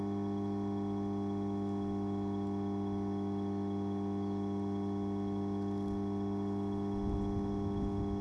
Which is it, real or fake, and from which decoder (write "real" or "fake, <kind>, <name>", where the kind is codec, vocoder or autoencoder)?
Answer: real